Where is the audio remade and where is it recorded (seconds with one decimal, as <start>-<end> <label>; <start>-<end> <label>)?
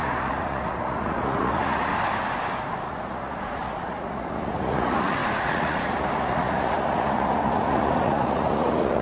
0.0-1.9 remade; 1.9-2.8 recorded; 2.8-9.0 remade